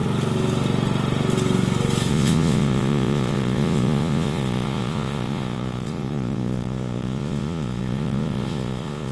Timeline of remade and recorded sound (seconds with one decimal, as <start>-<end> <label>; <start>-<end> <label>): 0.0-2.1 recorded; 2.1-9.1 remade